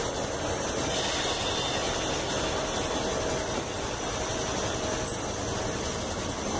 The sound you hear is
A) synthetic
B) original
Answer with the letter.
B